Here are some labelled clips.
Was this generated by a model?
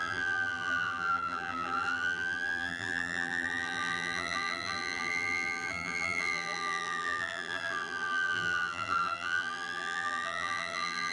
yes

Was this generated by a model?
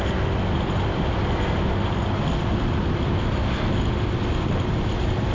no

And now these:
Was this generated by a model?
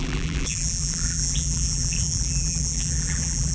yes